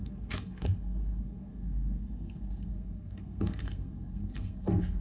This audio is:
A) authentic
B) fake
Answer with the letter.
B